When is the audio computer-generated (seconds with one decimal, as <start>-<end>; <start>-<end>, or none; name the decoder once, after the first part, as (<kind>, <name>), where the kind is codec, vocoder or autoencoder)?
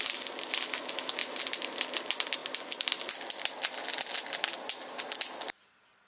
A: 1.2-1.8 (vocoder, BigVGAN v2)